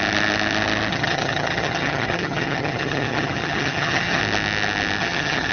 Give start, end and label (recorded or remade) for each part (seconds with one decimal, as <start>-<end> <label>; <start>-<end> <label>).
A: 0.0-0.9 recorded; 0.9-4.2 remade; 4.2-5.0 recorded; 5.0-5.5 remade